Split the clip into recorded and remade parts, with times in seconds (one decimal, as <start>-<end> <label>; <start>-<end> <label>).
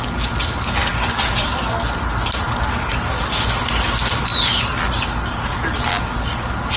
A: 0.0-6.8 recorded